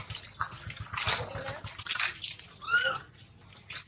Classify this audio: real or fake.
real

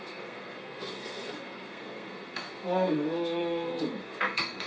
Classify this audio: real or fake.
fake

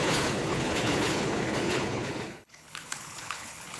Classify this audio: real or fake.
fake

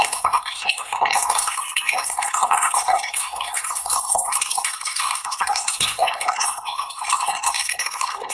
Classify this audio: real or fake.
fake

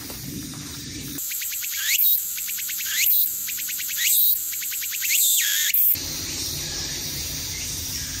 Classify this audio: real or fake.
fake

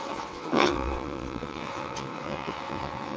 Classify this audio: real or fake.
fake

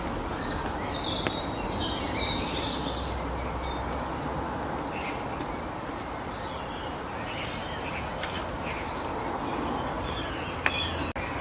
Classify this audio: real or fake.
real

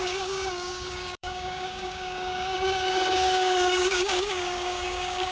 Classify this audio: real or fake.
fake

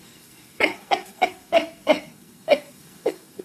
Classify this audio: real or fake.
fake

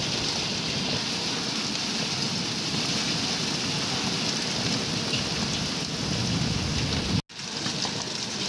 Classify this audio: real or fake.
real